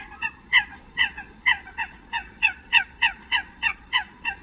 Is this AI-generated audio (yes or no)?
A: yes